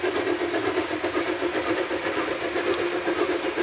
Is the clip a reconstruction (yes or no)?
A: no